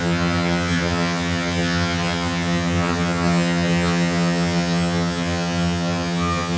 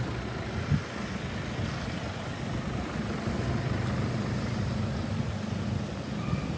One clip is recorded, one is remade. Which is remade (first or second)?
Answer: first